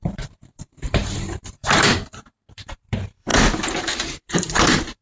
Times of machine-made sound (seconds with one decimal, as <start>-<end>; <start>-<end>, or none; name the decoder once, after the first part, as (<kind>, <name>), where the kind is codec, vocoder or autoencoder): 0.0-3.3 (vocoder, BigVGAN v2); 3.8-5.0